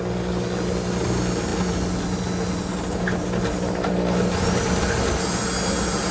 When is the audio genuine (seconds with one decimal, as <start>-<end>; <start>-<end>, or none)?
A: 0.0-6.1